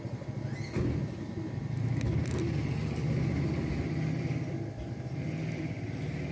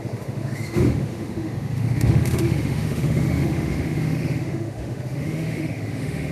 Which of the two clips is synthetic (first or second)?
second